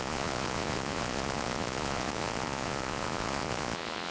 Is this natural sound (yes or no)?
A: no